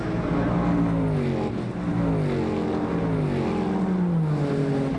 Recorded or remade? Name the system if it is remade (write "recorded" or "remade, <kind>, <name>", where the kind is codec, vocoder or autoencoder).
recorded